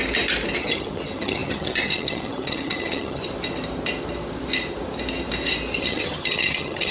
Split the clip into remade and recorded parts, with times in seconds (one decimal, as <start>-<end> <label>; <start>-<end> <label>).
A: 0.0-0.6 recorded; 0.6-3.2 remade; 3.2-5.8 recorded; 5.8-6.9 remade